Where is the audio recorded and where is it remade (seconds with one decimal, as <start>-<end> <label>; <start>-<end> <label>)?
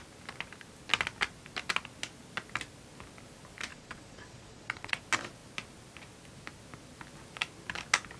0.0-3.7 recorded; 3.7-5.0 remade; 5.0-8.2 recorded